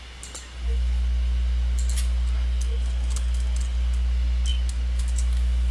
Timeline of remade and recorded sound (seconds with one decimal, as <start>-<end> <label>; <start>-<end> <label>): 0.0-5.7 recorded